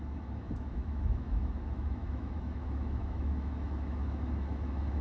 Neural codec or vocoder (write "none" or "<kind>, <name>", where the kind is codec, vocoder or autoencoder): autoencoder, DAC-VAE